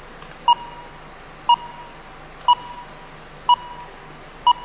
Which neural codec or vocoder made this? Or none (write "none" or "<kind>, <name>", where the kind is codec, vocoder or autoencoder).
none